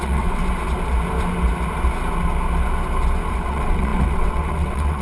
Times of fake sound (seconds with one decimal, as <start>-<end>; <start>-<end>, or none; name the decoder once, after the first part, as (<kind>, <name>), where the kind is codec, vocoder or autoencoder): 0.0-0.4 (vocoder, WaveNeXt); 3.4-5.0